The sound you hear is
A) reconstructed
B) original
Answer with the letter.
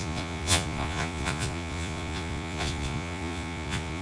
A